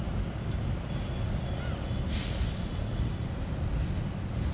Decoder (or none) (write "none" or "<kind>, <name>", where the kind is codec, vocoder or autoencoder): none